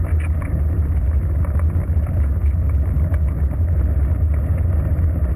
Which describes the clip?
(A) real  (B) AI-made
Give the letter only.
A